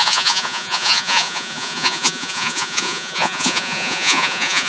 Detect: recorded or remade remade